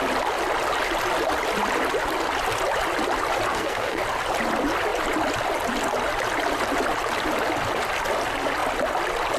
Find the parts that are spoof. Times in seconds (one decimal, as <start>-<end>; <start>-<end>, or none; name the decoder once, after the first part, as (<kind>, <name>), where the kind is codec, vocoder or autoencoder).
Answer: 3.5-4.0 (codec, SNAC)